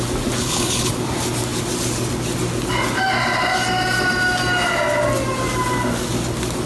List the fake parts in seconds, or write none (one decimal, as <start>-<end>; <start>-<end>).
0.4-0.9